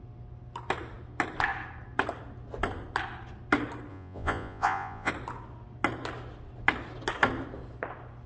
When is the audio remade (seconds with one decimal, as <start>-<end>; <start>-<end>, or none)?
3.9-5.1